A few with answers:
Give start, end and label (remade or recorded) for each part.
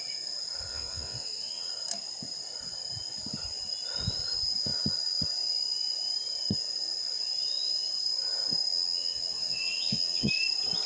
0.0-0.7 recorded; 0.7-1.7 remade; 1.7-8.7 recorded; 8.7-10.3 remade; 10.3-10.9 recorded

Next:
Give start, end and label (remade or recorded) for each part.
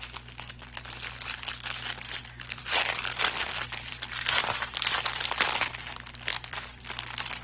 0.0-2.2 recorded; 2.2-5.6 remade; 5.6-6.3 recorded; 6.3-6.9 remade; 6.9-7.4 recorded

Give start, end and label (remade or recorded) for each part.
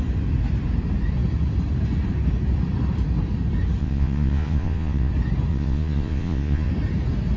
0.0-3.8 recorded; 3.8-5.1 remade; 5.1-5.5 recorded; 5.5-6.7 remade; 6.7-7.4 recorded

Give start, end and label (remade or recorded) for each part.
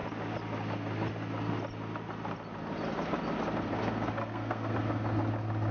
0.0-4.2 recorded; 4.2-4.7 remade; 4.7-5.7 recorded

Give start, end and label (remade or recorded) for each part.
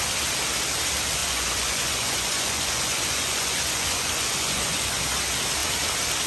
0.0-1.2 recorded; 1.2-5.0 remade; 5.0-6.3 recorded